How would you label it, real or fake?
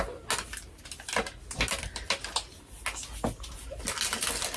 real